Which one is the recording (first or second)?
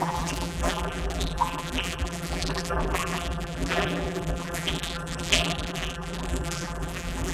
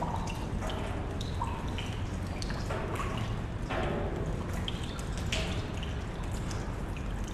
second